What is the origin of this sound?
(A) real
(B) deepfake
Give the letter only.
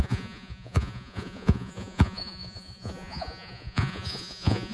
B